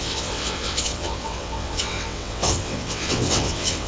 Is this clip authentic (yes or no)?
no